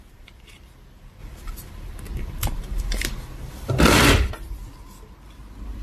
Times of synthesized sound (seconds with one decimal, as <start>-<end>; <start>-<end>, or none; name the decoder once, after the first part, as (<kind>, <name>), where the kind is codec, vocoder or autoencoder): 1.2-3.8 (vocoder, BigVGAN v2)